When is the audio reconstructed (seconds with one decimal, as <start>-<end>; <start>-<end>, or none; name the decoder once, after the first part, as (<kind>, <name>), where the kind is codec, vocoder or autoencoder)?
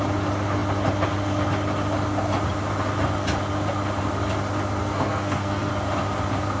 4.8-5.7 (codec, SNAC)